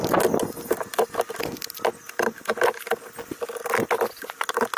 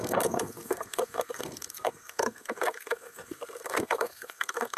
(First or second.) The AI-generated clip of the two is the second